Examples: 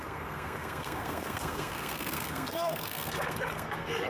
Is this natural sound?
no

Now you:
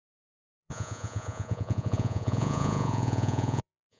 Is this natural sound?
no